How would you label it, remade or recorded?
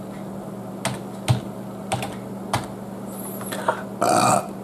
recorded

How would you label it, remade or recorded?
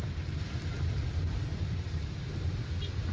remade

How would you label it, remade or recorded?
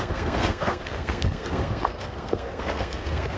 remade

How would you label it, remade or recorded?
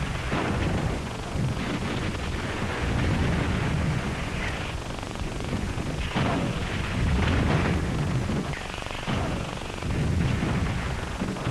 remade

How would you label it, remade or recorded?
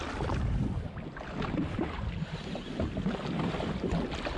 recorded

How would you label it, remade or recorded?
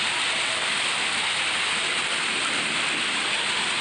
recorded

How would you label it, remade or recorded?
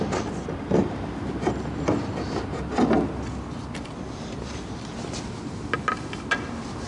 recorded